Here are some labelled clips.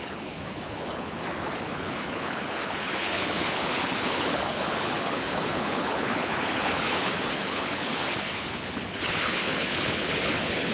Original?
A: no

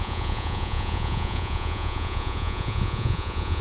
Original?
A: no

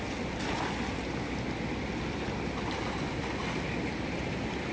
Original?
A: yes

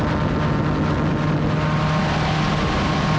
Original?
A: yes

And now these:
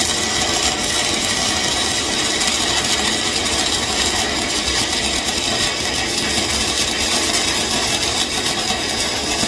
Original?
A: yes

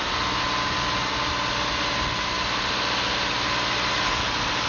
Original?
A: yes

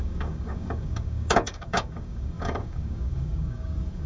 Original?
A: no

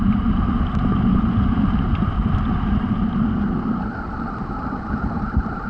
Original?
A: no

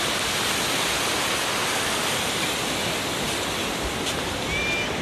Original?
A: yes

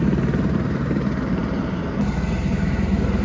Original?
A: yes